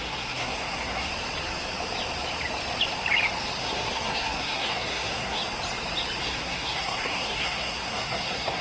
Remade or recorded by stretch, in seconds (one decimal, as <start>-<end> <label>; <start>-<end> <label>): 0.0-1.1 remade; 1.1-3.6 recorded; 3.6-5.4 remade; 5.4-6.2 recorded; 6.2-8.6 remade